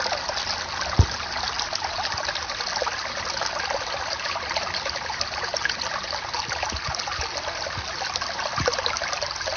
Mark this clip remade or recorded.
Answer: recorded